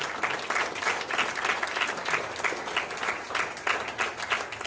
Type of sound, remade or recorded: recorded